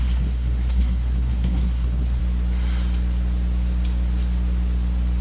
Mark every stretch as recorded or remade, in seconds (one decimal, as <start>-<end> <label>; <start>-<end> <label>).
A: 0.0-2.2 remade; 2.2-5.2 recorded